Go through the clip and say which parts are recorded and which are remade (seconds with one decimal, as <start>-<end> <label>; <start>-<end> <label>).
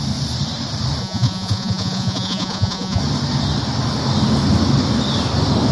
0.0-1.0 recorded; 1.0-3.0 remade; 3.0-5.7 recorded